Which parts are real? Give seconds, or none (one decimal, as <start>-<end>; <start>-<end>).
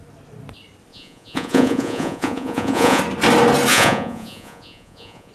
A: 0.0-0.9; 3.0-3.7